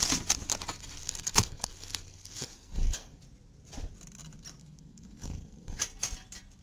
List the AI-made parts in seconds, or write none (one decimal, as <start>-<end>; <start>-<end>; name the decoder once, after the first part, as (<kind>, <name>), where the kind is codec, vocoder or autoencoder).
1.0-3.2 (codec, SNAC); 4.6-5.8